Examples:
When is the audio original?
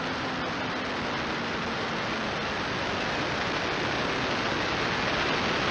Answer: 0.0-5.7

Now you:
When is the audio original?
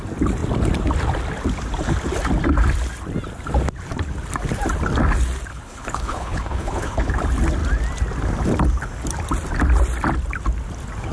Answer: 0.0-5.5; 7.1-11.1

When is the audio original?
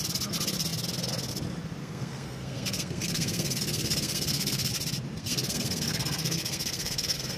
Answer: 0.0-1.8; 4.7-5.2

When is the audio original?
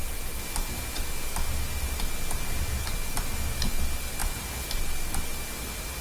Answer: 0.0-6.0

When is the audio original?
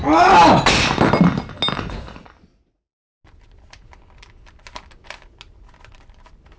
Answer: 0.0-6.6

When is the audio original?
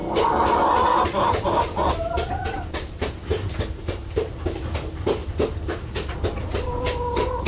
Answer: 0.0-7.5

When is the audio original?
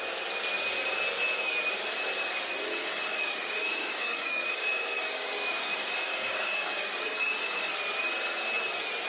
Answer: 0.0-2.8; 7.7-9.1